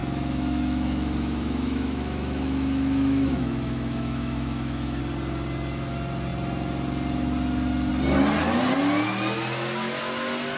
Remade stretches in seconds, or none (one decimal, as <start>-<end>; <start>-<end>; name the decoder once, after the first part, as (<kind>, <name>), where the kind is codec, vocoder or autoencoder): 0.0-5.0 (autoencoder, DAC-VAE)